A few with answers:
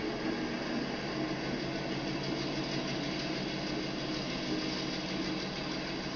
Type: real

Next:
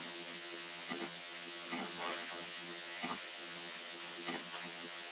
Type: fake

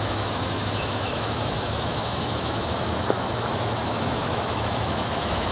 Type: fake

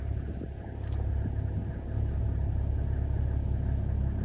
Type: real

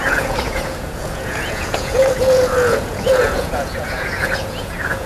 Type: fake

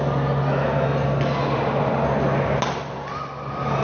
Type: real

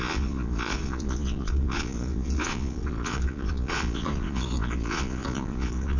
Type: fake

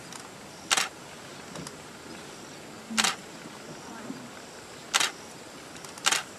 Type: real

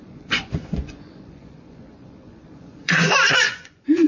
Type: fake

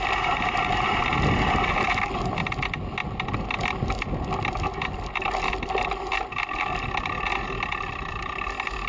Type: real